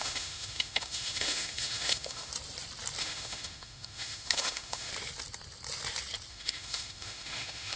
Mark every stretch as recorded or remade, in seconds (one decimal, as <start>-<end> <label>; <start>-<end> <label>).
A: 0.0-2.3 remade; 2.3-3.0 recorded; 3.0-4.9 remade; 4.9-6.3 recorded; 6.3-7.8 remade